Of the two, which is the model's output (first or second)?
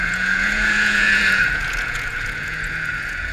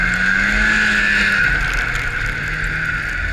first